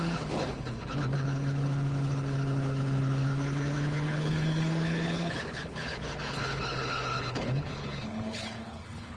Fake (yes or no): yes